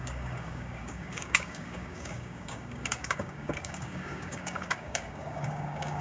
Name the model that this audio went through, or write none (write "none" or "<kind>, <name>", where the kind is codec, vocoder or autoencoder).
codec, DAC